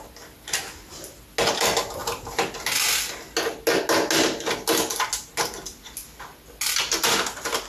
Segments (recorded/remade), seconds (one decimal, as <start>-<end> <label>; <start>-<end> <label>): 0.0-7.7 recorded